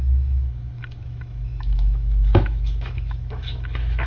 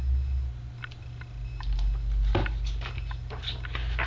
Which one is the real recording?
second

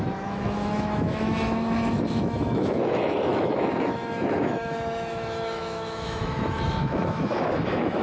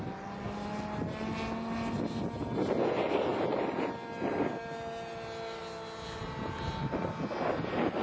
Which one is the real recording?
second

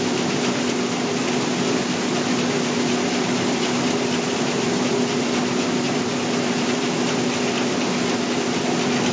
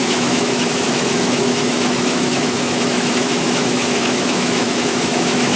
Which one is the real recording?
first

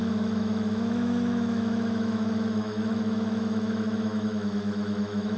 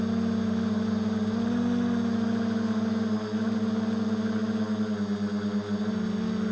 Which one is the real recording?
second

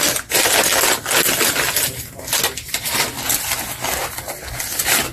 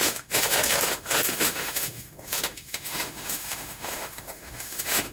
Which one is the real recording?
first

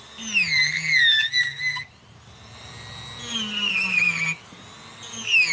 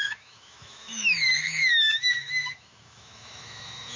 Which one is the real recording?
first